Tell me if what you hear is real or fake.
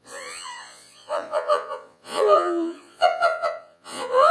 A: fake